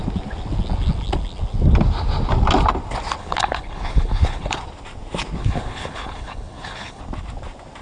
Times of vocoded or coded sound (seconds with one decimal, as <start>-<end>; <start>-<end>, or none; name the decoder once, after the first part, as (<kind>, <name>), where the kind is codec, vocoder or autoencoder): 3.2-4.5 (codec, HILCodec); 5.4-7.0